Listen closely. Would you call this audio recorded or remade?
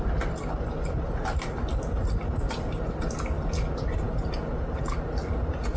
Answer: recorded